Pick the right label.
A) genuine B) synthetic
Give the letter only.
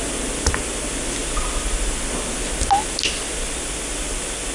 A